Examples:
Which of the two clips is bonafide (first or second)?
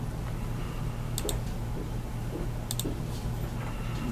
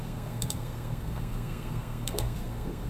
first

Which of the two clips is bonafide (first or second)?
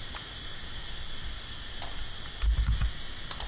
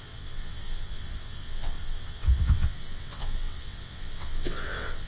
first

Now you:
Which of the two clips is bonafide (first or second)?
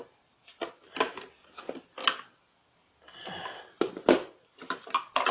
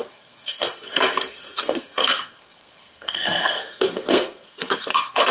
first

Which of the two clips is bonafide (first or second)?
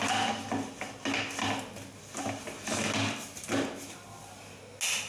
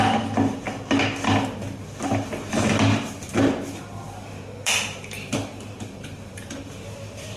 first